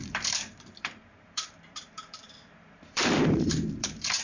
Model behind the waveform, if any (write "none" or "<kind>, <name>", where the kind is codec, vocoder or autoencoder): vocoder, BigVGAN v2